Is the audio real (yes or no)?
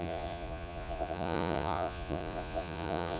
no